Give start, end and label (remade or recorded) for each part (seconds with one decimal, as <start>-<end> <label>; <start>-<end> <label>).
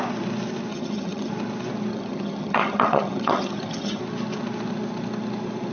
0.0-0.7 recorded; 0.7-1.3 remade; 1.3-1.9 recorded; 1.9-4.0 remade; 4.0-5.7 recorded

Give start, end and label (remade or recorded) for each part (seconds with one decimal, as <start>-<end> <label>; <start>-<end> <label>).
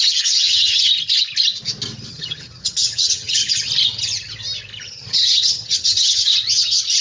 0.0-0.9 remade; 0.9-2.1 recorded; 2.1-3.4 remade; 3.4-5.1 recorded; 5.1-6.3 remade; 6.3-7.0 recorded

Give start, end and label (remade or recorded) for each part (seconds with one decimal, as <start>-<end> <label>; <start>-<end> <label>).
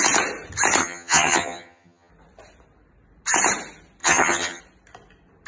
0.0-0.8 recorded; 0.8-2.1 remade; 2.1-4.0 recorded; 4.0-4.6 remade; 4.6-5.5 recorded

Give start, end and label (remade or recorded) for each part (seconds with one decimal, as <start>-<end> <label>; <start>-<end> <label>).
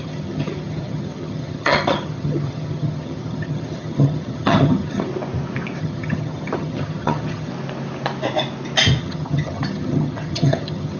0.0-5.1 remade; 5.1-5.8 recorded; 5.8-7.5 remade; 7.5-9.0 recorded; 9.0-11.0 remade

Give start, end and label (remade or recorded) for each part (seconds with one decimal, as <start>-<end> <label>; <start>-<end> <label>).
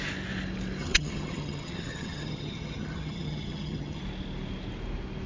0.0-0.8 recorded; 0.8-4.0 remade; 4.0-5.3 recorded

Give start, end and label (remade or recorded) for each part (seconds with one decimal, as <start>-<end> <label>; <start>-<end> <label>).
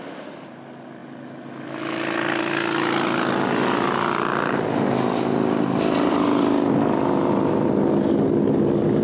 0.0-9.0 recorded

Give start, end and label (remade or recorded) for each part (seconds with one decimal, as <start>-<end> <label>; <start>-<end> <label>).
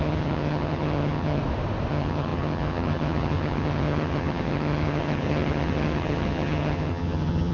0.0-1.4 remade; 1.4-1.9 recorded; 1.9-7.5 remade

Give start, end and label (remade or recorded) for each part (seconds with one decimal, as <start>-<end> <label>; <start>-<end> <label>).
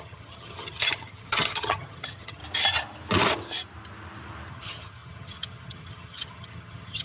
0.0-2.4 remade; 2.4-4.5 recorded; 4.5-7.0 remade